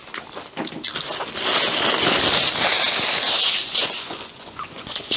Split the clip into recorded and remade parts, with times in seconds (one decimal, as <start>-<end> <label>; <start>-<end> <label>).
0.0-3.6 recorded; 3.6-5.2 remade